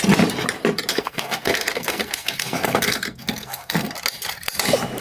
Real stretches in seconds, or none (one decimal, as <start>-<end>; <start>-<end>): 0.0-0.9; 3.9-5.0